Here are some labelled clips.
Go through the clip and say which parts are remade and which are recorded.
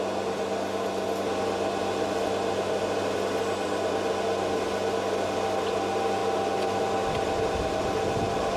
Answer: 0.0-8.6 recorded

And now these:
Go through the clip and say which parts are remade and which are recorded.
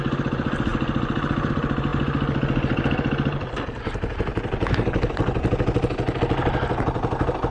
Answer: 0.0-7.5 recorded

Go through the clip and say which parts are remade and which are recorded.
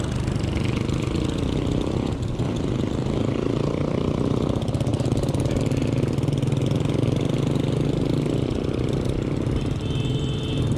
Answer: 0.0-10.8 recorded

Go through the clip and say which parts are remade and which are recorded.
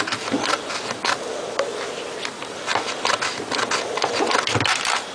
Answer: 0.0-5.1 recorded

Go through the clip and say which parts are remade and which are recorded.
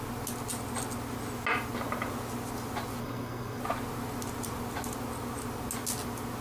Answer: 0.0-3.0 recorded; 3.0-3.6 remade; 3.6-6.4 recorded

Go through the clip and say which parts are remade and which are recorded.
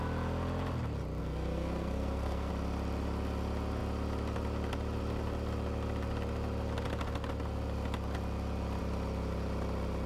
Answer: 0.0-1.2 recorded; 1.2-2.5 remade; 2.5-10.1 recorded